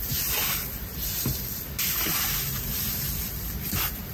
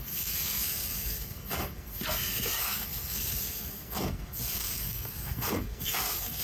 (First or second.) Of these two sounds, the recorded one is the first